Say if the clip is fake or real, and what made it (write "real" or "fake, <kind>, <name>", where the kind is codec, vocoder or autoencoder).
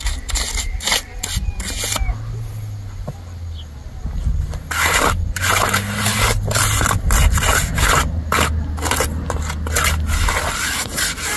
real